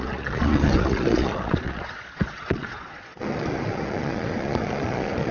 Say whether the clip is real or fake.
fake